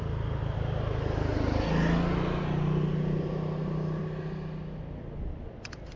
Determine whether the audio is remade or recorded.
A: recorded